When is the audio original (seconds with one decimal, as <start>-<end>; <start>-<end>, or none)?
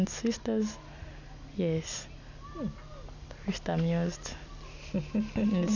0.0-5.8